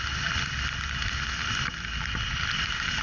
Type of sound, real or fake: real